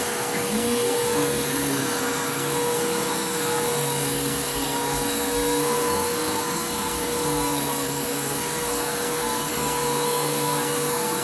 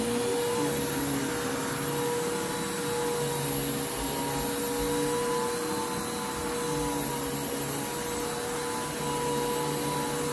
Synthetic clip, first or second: first